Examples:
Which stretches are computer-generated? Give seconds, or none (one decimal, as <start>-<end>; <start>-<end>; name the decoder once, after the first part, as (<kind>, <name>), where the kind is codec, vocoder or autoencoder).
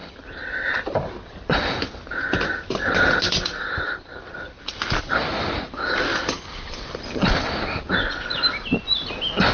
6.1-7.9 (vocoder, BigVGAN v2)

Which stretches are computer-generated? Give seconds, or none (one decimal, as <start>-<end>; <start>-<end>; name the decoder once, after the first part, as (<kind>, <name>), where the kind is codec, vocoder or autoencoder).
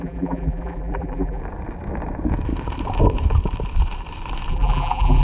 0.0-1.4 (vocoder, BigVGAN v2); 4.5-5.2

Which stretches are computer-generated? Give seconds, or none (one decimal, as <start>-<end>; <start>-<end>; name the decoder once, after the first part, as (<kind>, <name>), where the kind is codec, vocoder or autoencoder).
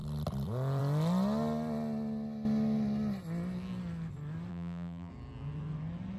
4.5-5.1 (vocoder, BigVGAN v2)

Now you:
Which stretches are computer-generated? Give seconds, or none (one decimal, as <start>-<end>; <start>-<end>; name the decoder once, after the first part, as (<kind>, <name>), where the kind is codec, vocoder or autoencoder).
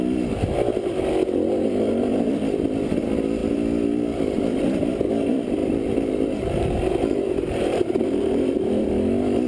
5.6-8.8 (vocoder, BigVGAN v2)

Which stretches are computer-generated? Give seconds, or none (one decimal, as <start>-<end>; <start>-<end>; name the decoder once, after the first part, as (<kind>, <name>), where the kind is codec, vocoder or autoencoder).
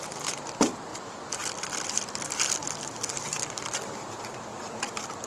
0.9-4.1 (vocoder, BigVGAN v2); 4.5-5.3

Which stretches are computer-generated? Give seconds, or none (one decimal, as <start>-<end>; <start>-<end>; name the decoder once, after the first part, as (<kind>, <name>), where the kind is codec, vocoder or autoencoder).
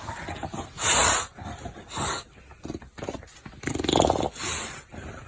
0.0-1.0 (vocoder, BigVGAN v2); 4.2-5.3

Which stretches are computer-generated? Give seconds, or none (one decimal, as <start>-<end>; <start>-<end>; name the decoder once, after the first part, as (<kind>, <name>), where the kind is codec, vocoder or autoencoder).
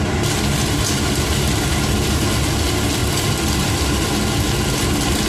none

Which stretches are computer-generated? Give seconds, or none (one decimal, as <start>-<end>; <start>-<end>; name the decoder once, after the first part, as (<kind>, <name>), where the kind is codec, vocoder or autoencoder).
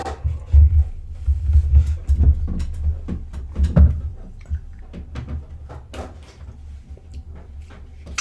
4.1-4.8 (vocoder, BigVGAN v2)